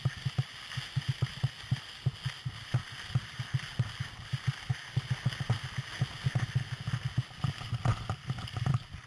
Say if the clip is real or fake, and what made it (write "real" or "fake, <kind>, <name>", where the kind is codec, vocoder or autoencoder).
real